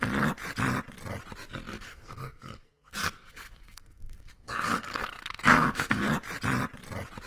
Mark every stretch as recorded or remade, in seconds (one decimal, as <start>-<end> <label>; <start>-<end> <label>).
0.0-1.7 recorded; 1.7-6.1 remade; 6.1-7.3 recorded